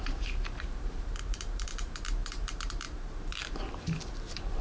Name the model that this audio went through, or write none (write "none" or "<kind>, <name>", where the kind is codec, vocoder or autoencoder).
vocoder, BigVGAN v2